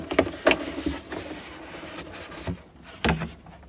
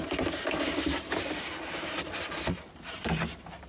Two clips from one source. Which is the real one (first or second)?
first